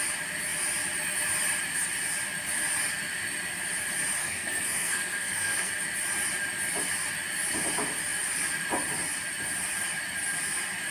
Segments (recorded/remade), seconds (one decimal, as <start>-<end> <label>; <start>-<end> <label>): 0.0-4.2 recorded; 4.2-5.7 remade; 5.7-10.9 recorded